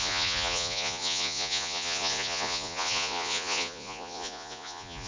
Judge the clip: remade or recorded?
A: remade